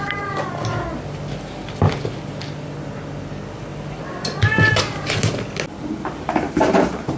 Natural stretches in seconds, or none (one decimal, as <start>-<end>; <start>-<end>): 0.0-7.2

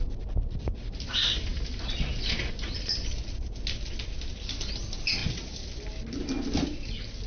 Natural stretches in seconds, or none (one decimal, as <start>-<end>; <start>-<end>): 0.0-7.3